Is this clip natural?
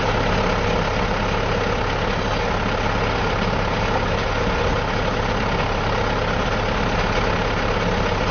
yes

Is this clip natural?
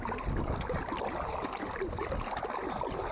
yes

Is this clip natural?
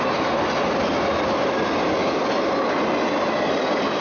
yes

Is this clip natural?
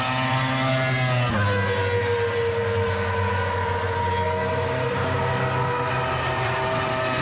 yes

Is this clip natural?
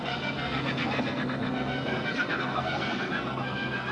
no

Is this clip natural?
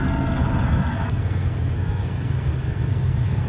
no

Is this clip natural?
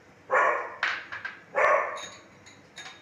yes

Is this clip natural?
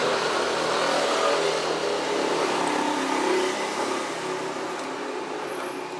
yes